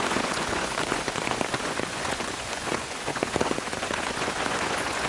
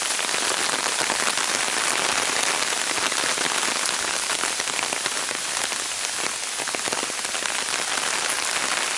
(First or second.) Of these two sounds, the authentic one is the second